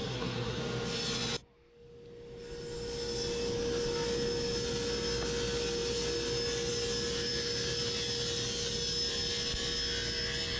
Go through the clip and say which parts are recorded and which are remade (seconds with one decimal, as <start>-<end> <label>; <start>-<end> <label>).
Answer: 0.0-0.6 remade; 0.6-10.6 recorded